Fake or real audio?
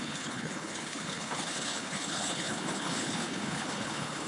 fake